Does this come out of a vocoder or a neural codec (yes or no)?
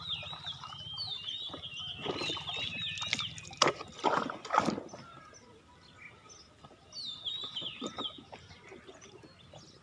no